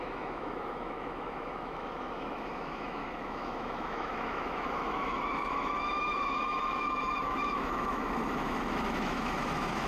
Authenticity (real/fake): fake